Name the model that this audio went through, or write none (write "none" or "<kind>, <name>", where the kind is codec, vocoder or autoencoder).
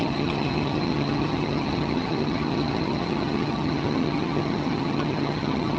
vocoder, HiFi-GAN